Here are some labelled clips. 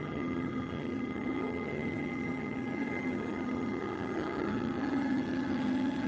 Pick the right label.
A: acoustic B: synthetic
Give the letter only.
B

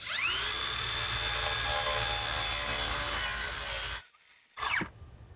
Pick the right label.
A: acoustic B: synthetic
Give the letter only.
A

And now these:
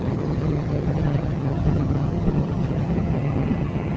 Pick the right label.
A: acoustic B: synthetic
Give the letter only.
B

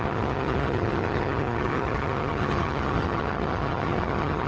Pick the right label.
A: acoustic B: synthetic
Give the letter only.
B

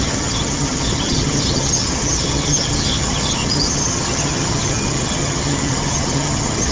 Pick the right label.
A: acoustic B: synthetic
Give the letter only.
B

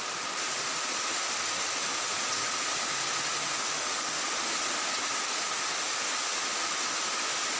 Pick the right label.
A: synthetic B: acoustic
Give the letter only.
B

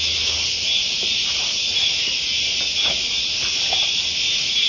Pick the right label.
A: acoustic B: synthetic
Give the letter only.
A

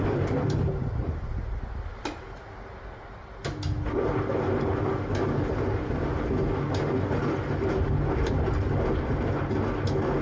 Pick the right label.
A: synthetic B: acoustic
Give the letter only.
B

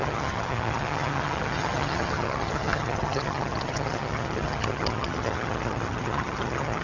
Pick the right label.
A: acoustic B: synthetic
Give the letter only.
B